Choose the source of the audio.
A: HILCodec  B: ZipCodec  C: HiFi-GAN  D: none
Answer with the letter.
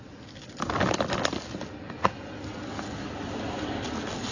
D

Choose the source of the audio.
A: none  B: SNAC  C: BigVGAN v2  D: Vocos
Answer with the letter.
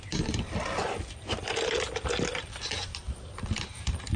A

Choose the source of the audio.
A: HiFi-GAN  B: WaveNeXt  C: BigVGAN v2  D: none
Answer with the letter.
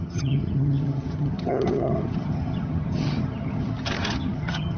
A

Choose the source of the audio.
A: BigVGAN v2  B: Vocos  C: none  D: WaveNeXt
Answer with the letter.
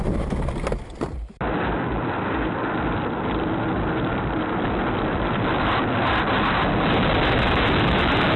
C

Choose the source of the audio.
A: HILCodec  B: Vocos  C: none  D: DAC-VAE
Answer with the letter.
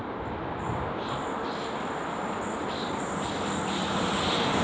C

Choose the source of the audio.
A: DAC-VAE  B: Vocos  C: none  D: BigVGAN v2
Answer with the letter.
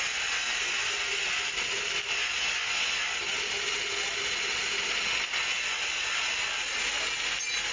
C